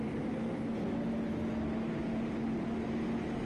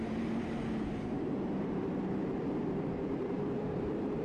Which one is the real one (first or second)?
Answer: first